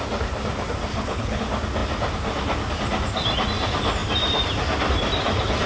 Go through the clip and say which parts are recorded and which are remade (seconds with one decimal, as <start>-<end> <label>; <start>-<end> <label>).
0.0-0.9 recorded; 0.9-1.4 remade; 1.4-5.7 recorded

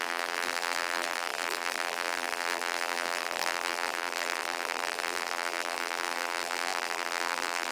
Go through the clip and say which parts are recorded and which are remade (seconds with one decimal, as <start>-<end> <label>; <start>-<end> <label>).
0.0-7.7 remade

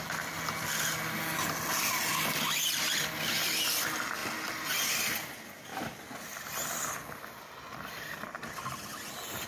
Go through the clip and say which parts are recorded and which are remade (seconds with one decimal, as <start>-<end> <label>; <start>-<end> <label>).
0.0-9.5 recorded

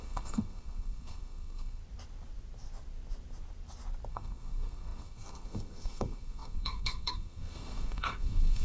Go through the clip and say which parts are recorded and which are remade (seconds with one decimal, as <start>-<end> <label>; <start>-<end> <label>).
0.0-1.8 remade; 1.8-4.1 recorded; 4.1-8.6 remade

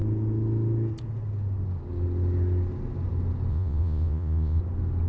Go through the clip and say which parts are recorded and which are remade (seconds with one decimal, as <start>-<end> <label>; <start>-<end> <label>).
0.0-3.5 recorded; 3.5-4.6 remade; 4.6-5.1 recorded